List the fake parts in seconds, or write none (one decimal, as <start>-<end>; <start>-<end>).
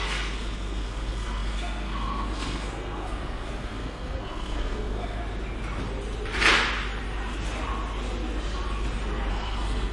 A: 0.0-5.2; 9.3-9.9